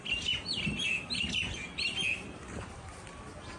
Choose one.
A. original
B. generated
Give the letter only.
A